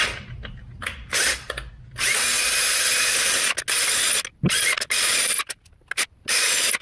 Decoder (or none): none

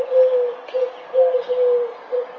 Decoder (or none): none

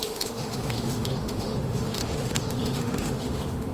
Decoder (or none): autoencoder, DAC-VAE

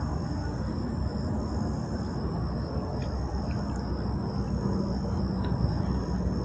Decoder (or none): none